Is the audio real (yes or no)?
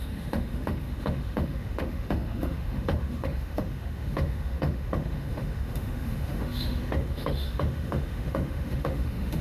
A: no